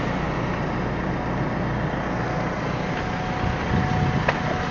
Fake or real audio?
real